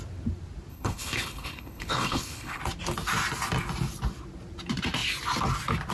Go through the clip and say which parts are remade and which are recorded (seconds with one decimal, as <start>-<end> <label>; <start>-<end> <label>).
0.0-0.7 recorded; 0.7-2.6 remade; 2.6-5.9 recorded

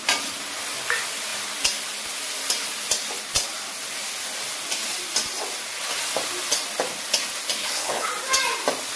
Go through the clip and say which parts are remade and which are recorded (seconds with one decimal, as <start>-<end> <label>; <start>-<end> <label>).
0.0-7.6 recorded; 7.6-8.1 remade; 8.1-9.0 recorded

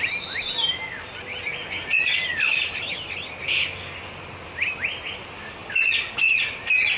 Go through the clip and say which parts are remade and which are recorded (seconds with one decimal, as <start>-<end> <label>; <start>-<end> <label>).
0.0-7.0 recorded

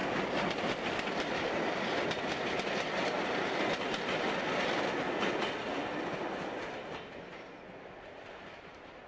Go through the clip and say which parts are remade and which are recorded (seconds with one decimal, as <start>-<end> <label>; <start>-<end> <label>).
0.0-9.1 recorded

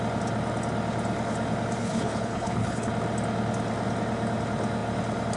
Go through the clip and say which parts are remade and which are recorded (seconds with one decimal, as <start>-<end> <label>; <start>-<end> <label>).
0.0-1.8 recorded; 1.8-2.9 remade; 2.9-5.4 recorded